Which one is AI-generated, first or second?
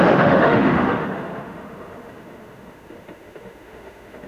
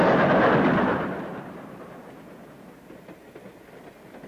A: first